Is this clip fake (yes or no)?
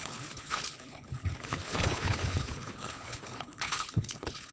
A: yes